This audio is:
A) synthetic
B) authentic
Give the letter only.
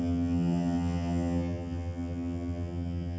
A